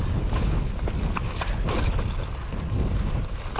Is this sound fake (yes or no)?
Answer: no